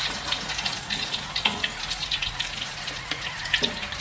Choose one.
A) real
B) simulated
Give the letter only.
B